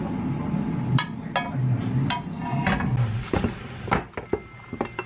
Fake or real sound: real